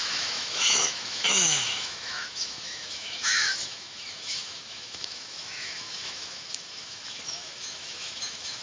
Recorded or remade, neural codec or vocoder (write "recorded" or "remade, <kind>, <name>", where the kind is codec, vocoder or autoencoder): remade, autoencoder, DAC-VAE